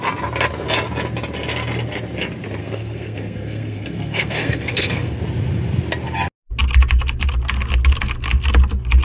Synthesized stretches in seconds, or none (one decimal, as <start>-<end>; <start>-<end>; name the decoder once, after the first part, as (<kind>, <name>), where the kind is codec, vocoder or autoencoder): 2.6-5.2 (codec, SNAC)

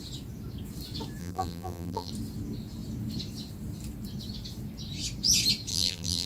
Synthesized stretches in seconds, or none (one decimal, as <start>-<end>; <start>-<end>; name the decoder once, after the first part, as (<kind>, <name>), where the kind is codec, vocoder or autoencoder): 1.2-2.1 (vocoder, BigVGAN v2); 5.7-6.3

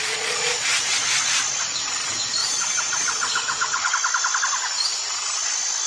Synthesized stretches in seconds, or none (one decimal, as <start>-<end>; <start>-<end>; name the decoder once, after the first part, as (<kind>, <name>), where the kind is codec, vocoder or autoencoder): 0.0-0.7 (vocoder, Vocos); 2.4-3.9

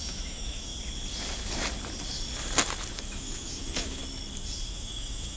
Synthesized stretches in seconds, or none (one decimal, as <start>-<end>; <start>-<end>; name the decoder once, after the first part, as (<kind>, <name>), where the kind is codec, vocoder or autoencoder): 0.0-0.7 (autoencoder, DAC-VAE); 2.9-4.0; 4.7-5.4

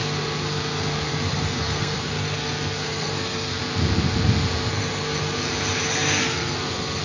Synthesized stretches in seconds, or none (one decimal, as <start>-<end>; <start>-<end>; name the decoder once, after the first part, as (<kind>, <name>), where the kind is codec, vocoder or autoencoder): 0.0-3.6 (codec, SNAC); 4.7-5.5; 5.9-7.0

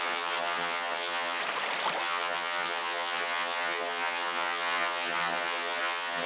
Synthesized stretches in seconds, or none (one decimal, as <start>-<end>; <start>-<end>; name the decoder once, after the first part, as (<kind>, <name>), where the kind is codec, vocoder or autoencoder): 0.0-1.4 (vocoder, HiFi-GAN); 2.0-6.3